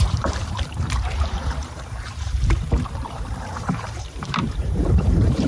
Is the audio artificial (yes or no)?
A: yes